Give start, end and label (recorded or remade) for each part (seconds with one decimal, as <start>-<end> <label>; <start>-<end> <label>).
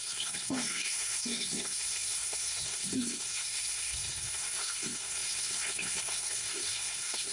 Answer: 0.0-7.3 remade